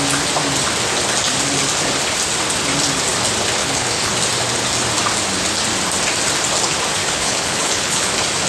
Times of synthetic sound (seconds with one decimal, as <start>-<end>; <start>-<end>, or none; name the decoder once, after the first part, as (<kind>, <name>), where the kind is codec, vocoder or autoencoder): 3.6-4.1 (codec, HILCodec); 7.0-8.1